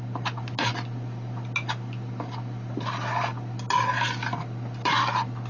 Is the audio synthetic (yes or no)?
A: no